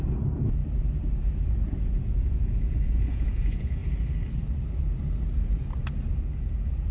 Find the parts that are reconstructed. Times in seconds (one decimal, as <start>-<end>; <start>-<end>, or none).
0.0-0.6; 1.8-3.8; 6.2-6.9